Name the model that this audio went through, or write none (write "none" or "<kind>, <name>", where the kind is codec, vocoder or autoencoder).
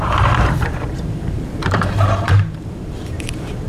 vocoder, BigVGAN v2